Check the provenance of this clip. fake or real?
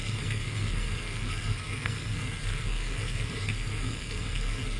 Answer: fake